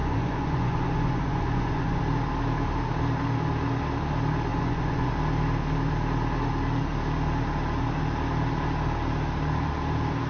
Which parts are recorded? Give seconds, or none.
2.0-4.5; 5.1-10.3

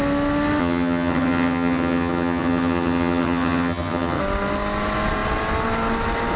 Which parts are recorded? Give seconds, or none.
0.0-0.6; 4.2-6.4

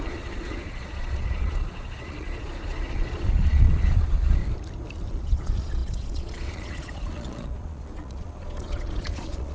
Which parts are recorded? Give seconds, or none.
4.4-5.1